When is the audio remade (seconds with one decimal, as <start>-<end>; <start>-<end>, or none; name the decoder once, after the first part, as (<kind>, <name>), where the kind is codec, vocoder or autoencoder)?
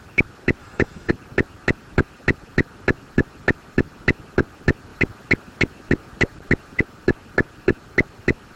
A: 0.6-1.1 (autoencoder, DAC-VAE)